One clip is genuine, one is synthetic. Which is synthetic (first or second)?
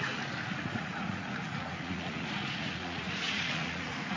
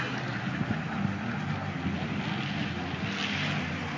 first